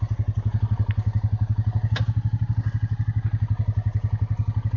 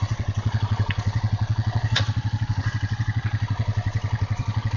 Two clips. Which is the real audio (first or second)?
first